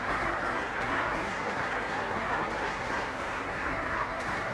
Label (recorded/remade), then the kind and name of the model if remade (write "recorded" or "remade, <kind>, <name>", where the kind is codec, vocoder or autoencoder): remade, codec, SNAC